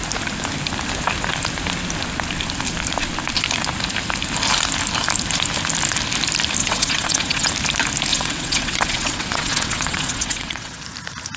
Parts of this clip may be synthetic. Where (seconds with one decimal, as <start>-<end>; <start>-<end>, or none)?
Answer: 6.6-7.5; 8.1-10.8